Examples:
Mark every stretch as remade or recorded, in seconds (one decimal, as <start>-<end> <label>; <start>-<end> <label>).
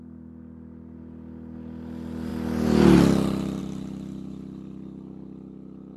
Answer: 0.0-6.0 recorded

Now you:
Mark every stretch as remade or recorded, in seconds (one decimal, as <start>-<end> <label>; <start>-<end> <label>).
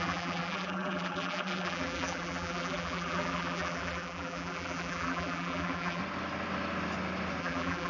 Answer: 0.0-6.0 remade; 6.0-7.4 recorded; 7.4-7.9 remade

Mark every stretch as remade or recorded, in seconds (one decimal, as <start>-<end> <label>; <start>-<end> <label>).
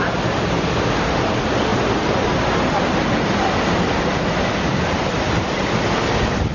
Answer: 0.0-6.5 recorded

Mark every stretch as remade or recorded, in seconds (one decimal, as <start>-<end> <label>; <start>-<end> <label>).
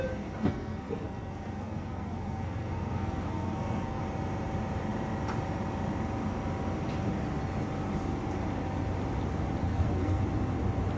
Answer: 0.0-0.4 recorded; 0.4-4.0 remade; 4.0-9.6 recorded; 9.6-10.2 remade; 10.2-11.0 recorded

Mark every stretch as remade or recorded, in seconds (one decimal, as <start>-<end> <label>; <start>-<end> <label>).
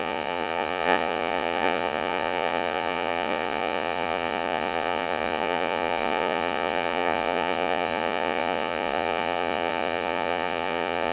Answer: 0.0-11.1 remade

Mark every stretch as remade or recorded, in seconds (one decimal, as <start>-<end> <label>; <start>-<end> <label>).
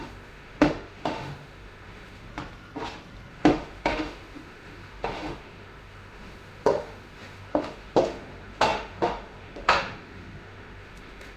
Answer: 0.0-2.3 remade; 2.3-3.3 recorded; 3.3-11.4 remade